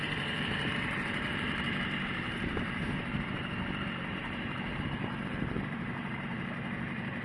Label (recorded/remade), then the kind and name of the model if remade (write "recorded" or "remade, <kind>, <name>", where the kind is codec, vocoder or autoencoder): remade, vocoder, BigVGAN v2